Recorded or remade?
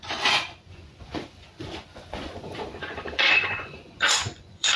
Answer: remade